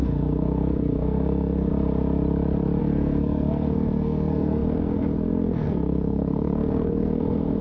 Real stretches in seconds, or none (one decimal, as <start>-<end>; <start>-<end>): 1.7-2.8

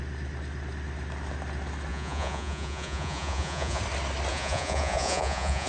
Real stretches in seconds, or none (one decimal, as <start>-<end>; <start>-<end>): 0.0-1.9; 3.8-4.3

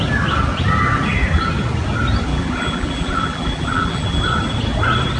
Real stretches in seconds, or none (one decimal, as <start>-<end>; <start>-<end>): 0.0-2.3; 4.2-5.2

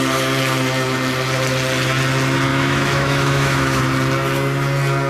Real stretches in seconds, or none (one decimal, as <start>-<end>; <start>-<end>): 0.0-2.5; 3.8-5.1